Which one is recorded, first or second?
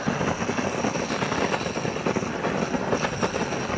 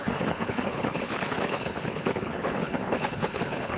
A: first